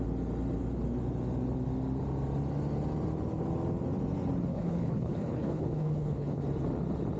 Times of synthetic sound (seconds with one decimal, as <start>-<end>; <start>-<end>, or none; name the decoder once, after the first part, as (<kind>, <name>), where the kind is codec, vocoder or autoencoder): 4.5-6.4 (codec, HILCodec)